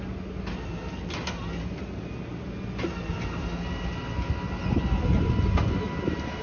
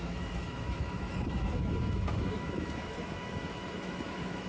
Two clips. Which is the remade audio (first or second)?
second